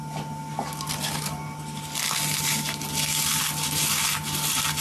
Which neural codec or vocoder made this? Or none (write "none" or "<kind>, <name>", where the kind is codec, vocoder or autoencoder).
none